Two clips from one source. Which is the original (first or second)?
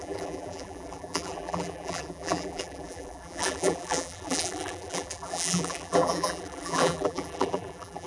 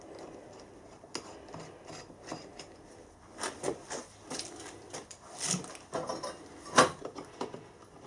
second